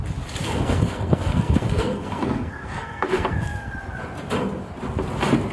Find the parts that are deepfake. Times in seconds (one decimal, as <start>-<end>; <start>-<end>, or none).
0.4-3.7